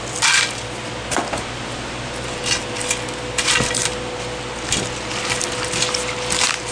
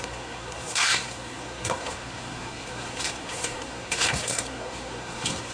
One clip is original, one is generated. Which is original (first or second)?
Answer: first